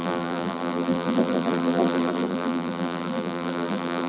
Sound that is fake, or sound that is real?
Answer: fake